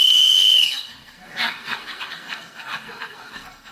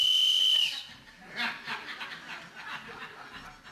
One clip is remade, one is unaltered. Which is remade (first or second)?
first